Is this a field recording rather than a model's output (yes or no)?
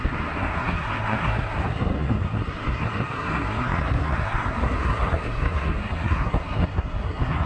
no